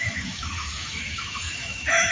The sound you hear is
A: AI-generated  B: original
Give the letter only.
A